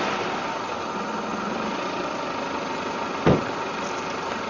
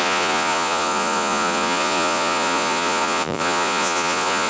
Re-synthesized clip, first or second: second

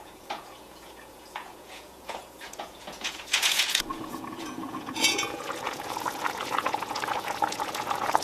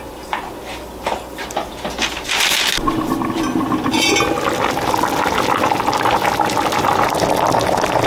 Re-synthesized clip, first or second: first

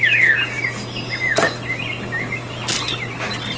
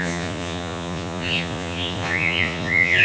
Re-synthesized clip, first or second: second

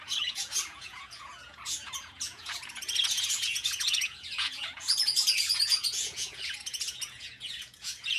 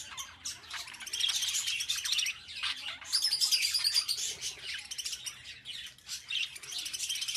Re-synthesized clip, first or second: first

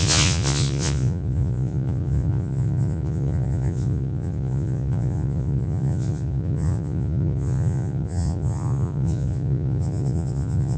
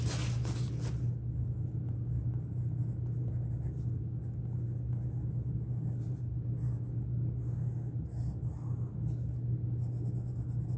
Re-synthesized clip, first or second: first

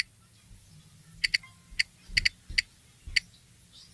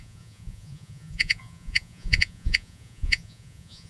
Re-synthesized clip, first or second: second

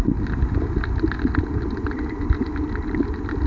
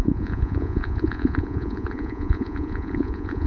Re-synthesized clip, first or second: second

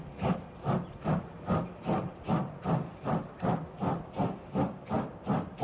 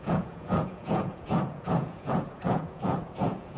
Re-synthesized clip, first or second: second